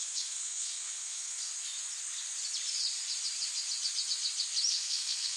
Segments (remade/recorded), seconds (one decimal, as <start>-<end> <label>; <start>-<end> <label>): 0.0-1.5 remade; 1.5-4.7 recorded; 4.7-5.4 remade

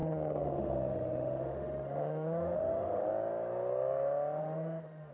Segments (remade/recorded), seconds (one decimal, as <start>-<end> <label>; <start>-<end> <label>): 0.0-3.1 remade; 3.1-4.4 recorded; 4.4-5.1 remade

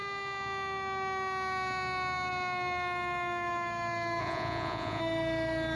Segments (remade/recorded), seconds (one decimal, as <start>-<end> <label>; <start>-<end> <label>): 0.0-4.2 recorded; 4.2-5.0 remade; 5.0-5.8 recorded